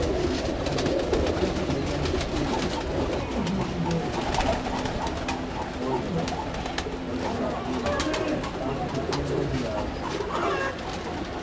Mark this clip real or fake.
real